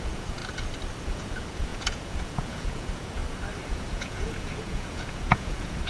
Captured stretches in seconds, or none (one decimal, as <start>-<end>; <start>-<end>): 0.4-1.0; 3.2-3.7